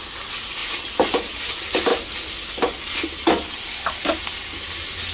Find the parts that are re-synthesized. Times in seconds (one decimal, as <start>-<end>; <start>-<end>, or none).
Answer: none